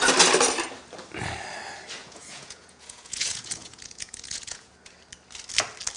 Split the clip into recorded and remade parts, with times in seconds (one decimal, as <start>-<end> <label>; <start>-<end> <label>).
0.0-2.0 recorded; 2.0-4.7 remade; 4.7-6.0 recorded